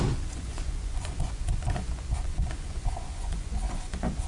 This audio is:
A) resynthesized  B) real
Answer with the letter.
A